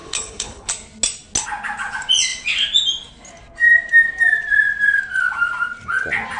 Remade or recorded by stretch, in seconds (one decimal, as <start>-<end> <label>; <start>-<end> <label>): 0.0-0.7 remade; 0.7-6.4 recorded